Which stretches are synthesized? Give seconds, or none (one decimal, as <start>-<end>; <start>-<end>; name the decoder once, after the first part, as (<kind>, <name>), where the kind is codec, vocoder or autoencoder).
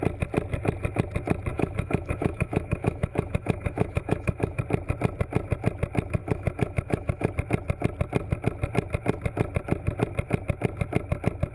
1.5-4.6 (autoencoder, DAC-VAE); 6.2-7.3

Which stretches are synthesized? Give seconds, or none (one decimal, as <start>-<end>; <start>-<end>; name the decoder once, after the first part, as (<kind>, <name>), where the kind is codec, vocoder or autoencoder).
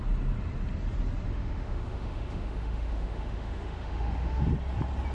1.3-4.4 (autoencoder, DAC-VAE)